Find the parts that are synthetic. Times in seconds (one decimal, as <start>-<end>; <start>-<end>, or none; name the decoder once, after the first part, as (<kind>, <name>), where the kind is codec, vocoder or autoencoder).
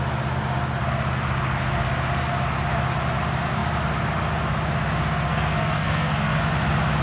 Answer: 5.3-6.4 (codec, SNAC)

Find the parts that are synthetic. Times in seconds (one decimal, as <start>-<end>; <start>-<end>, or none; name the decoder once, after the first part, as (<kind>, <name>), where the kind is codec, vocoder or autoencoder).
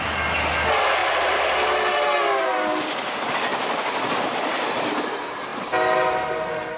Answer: none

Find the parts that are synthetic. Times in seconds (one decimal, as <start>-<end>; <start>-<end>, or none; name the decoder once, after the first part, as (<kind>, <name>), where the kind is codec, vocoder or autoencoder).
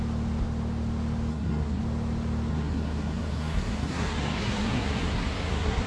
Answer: 1.3-1.8 (codec, SNAC); 2.5-5.9